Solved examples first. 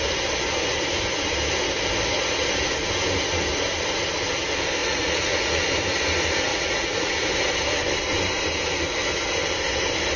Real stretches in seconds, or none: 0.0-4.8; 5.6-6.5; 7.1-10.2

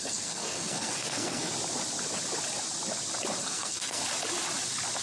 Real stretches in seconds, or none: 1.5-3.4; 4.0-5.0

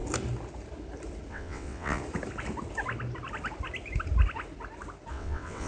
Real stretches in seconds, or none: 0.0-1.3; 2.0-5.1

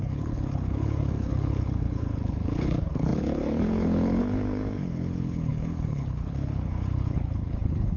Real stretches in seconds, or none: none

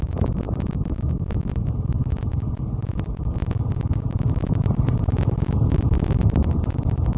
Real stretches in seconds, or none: 0.0-7.2